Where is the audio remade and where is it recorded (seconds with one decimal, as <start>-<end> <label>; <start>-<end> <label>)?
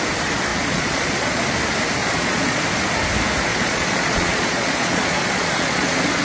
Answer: 0.0-0.5 recorded; 0.5-1.4 remade; 1.4-2.0 recorded; 2.0-2.6 remade; 2.6-3.5 recorded; 3.5-6.2 remade